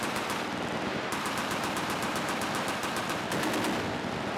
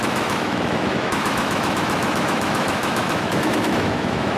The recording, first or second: first